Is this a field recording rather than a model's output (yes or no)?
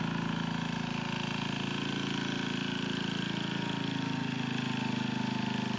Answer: yes